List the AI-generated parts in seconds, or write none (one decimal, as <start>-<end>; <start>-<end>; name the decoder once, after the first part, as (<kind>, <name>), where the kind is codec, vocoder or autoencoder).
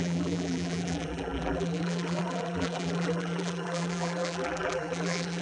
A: 0.0-5.4 (vocoder, BigVGAN v2)